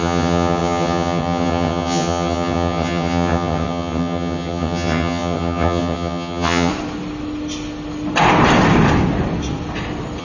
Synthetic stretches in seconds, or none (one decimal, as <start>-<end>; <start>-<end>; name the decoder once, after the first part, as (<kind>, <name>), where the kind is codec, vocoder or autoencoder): 0.0-6.7 (vocoder, HiFi-GAN)